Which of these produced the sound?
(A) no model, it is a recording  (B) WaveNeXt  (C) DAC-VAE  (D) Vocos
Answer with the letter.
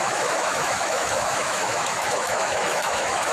C